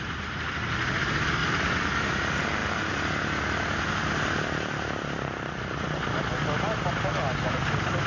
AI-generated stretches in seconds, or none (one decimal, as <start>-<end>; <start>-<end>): none